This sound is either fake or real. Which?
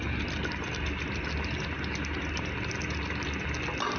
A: real